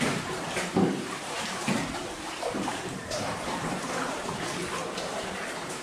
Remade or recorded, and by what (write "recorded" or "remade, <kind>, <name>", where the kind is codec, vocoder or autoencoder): remade, vocoder, BigVGAN v2